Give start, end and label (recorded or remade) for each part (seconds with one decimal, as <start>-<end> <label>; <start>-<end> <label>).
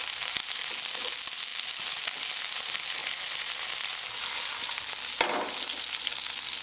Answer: 0.0-6.6 recorded